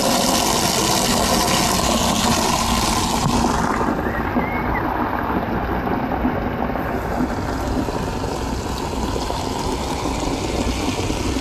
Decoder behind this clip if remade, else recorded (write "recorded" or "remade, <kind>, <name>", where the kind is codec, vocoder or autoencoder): recorded